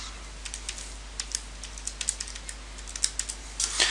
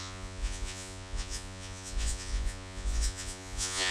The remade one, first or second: second